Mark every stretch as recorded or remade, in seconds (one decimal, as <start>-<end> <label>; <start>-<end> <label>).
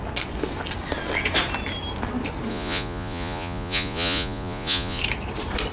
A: 0.0-2.5 recorded; 2.5-5.0 remade; 5.0-5.7 recorded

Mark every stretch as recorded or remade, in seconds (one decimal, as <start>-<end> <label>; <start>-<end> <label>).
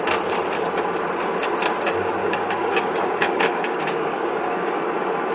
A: 0.0-2.2 recorded; 2.2-4.8 remade; 4.8-5.3 recorded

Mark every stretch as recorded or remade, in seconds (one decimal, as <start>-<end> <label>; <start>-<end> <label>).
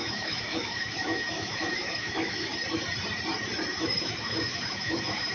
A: 0.0-2.5 remade; 2.5-3.8 recorded; 3.8-5.3 remade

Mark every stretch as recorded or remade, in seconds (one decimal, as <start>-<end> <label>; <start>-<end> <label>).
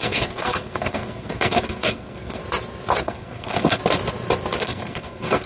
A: 0.0-2.4 remade; 2.4-3.0 recorded; 3.0-3.8 remade; 3.8-4.6 recorded; 4.6-5.5 remade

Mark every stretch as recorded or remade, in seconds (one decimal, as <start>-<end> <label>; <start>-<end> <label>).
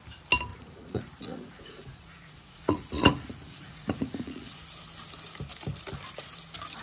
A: 0.0-0.5 recorded; 0.5-4.6 remade; 4.6-6.8 recorded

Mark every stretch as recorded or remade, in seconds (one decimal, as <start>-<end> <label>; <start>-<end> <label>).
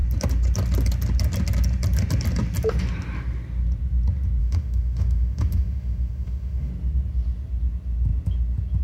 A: 0.0-4.4 recorded; 4.4-6.7 remade; 6.7-8.8 recorded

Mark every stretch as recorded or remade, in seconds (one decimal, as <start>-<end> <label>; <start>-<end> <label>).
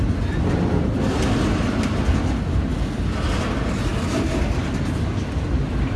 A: 0.0-6.0 recorded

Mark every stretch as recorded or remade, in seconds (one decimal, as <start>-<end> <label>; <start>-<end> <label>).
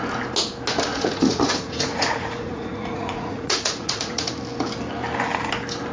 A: 0.0-0.9 recorded; 0.9-4.3 remade; 4.3-5.9 recorded